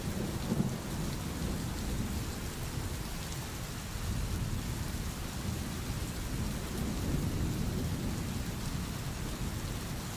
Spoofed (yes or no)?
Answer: no